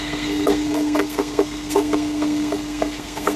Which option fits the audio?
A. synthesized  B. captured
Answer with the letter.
A